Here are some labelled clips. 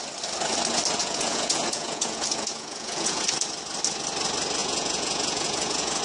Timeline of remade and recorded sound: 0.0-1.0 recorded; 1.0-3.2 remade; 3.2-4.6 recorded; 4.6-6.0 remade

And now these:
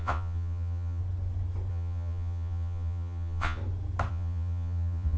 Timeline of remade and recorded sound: 0.0-1.0 remade; 1.0-1.7 recorded; 1.7-3.6 remade; 3.6-4.1 recorded; 4.1-5.2 remade

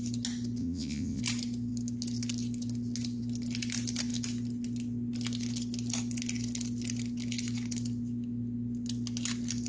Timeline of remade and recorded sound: 0.0-0.6 recorded; 0.6-1.2 remade; 1.2-9.7 recorded